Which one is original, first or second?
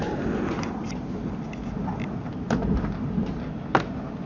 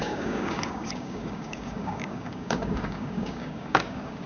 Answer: first